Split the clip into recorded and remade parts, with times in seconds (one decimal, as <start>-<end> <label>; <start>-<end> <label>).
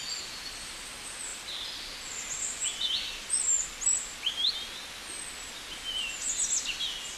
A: 0.0-7.2 recorded